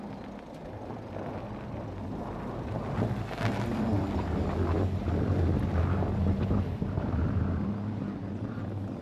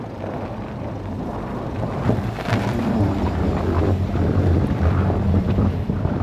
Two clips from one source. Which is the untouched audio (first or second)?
first